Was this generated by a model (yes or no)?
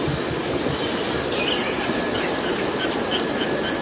no